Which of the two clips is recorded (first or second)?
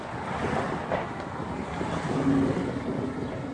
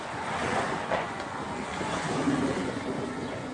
first